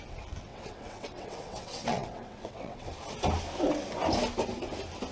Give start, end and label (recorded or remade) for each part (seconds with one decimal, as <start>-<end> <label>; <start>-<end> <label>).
0.0-0.5 recorded; 0.5-2.9 remade; 2.9-5.1 recorded